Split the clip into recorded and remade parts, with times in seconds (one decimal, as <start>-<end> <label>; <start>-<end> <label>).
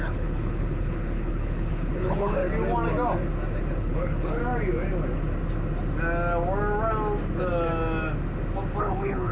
0.0-2.4 remade; 2.4-3.8 recorded; 3.8-4.4 remade; 4.4-8.8 recorded; 8.8-9.3 remade